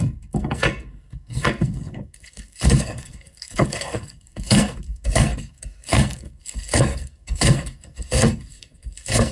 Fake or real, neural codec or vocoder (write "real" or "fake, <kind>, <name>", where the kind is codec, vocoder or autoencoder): fake, codec, SNAC